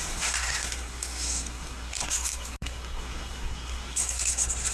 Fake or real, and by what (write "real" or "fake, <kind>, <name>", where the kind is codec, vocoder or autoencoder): fake, codec, SNAC